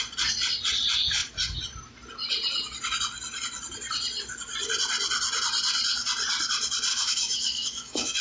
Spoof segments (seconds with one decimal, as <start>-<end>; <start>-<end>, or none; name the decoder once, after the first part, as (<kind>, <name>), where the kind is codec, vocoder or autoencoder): 6.9-8.2 (autoencoder, DAC-VAE)